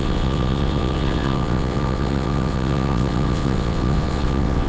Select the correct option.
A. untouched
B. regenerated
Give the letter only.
B